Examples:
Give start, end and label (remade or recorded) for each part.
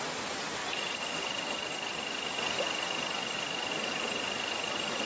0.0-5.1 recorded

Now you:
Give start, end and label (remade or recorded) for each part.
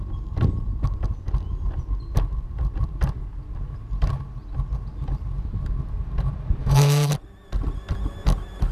0.0-6.6 recorded; 6.6-7.1 remade; 7.1-8.7 recorded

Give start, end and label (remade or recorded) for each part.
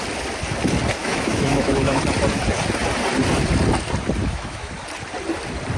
0.0-1.0 recorded; 1.0-2.0 remade; 2.0-4.2 recorded; 4.2-4.7 remade; 4.7-5.8 recorded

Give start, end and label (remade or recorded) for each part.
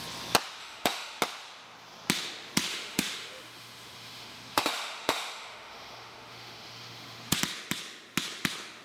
0.0-0.6 recorded; 0.6-1.2 remade; 1.2-2.7 recorded; 2.7-7.4 remade; 7.4-8.8 recorded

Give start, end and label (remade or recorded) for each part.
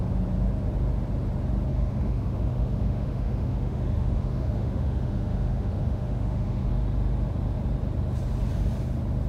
0.0-1.7 recorded; 1.7-6.7 remade; 6.7-9.3 recorded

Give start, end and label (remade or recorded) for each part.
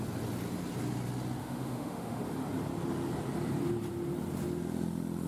0.0-1.4 recorded; 1.4-2.2 remade; 2.2-5.3 recorded